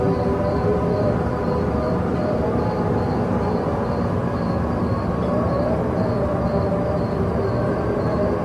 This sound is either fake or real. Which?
fake